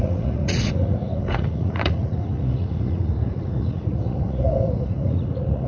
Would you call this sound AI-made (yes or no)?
yes